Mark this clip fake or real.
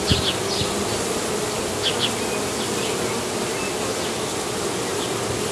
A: real